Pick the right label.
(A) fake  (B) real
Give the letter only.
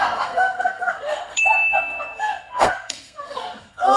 A